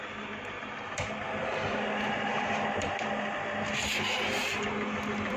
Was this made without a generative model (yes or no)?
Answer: no